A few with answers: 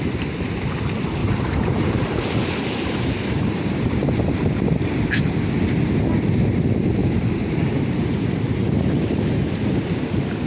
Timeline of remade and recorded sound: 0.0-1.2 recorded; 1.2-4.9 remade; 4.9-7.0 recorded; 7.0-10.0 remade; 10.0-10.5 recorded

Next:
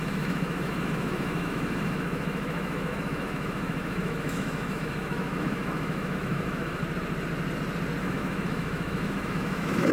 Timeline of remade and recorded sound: 0.0-6.8 remade; 6.8-8.0 recorded; 8.0-9.9 remade

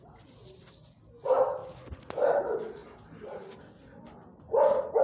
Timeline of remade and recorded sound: 0.0-5.0 recorded